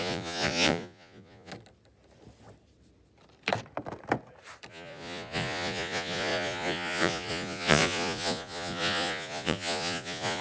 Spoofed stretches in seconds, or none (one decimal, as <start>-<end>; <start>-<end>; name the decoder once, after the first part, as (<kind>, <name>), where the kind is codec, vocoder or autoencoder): 0.0-1.5 (vocoder, Vocos); 4.7-10.4